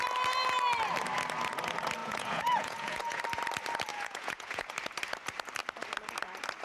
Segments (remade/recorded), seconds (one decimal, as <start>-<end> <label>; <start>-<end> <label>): 0.0-2.0 recorded; 2.0-3.2 remade; 3.2-3.9 recorded; 3.9-4.7 remade; 4.7-6.6 recorded